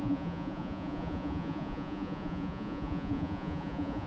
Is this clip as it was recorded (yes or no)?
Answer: no